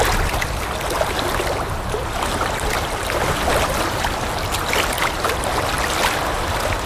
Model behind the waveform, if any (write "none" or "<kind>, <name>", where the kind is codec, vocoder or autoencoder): none